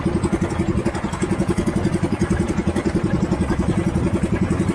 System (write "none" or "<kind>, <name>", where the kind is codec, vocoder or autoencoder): none